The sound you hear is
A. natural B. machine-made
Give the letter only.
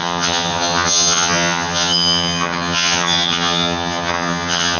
B